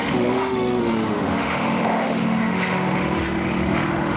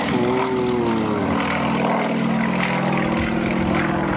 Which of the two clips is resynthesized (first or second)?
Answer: first